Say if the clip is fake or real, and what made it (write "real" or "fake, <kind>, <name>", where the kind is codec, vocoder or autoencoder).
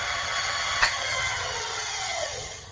fake, vocoder, HiFi-GAN